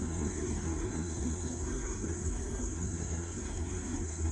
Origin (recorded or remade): remade